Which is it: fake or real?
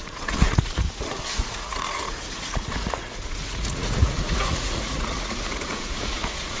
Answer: fake